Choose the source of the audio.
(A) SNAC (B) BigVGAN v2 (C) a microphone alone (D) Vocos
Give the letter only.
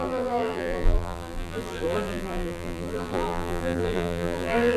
B